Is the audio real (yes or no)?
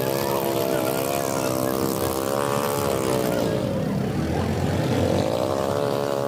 yes